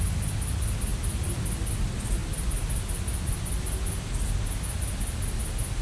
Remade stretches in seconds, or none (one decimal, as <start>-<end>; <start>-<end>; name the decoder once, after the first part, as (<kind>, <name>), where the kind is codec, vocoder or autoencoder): none